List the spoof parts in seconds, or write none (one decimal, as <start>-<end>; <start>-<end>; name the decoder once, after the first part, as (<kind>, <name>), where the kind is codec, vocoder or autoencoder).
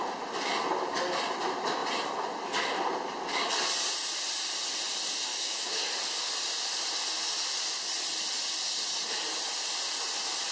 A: 5.3-5.9 (autoencoder, DAC-VAE)